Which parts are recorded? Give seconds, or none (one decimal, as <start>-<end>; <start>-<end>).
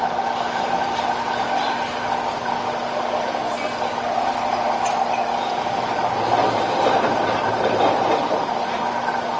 0.0-9.4